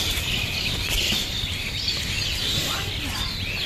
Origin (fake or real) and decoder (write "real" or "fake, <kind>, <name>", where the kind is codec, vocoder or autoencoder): real